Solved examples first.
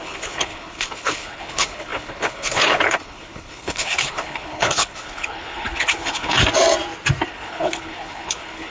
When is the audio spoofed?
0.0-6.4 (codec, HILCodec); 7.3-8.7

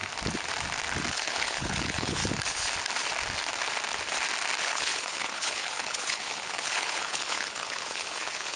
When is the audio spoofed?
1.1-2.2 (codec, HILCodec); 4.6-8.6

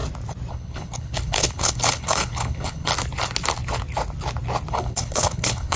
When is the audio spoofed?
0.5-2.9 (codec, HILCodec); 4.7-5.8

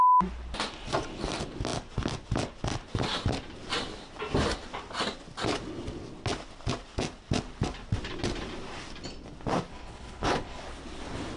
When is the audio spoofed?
9.7-10.6 (codec, HILCodec)